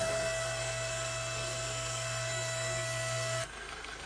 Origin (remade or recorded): remade